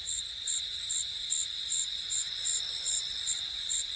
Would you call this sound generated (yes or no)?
no